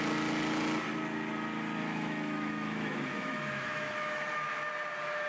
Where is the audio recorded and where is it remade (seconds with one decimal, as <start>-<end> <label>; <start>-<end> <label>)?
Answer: 0.0-1.8 recorded; 1.8-4.7 remade; 4.7-5.3 recorded